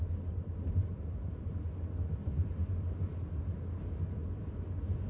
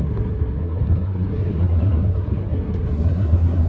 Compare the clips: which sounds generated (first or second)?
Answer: second